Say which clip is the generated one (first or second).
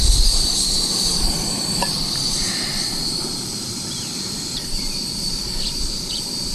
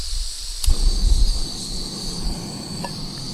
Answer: first